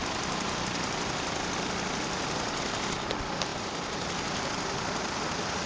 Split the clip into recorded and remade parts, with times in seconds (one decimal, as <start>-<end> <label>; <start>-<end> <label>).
0.0-1.1 remade; 1.1-3.5 recorded; 3.5-4.6 remade; 4.6-5.7 recorded